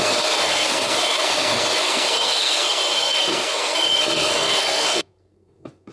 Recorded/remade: remade